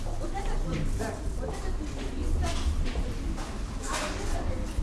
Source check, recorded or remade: recorded